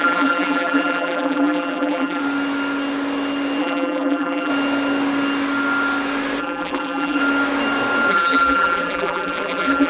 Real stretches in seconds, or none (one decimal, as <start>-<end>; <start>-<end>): 2.2-3.6; 4.5-6.4; 7.2-8.1